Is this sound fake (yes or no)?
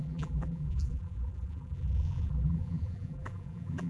yes